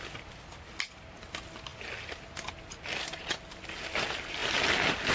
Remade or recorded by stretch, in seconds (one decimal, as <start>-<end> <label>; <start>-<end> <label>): 0.0-5.1 recorded